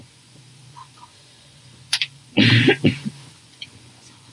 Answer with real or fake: fake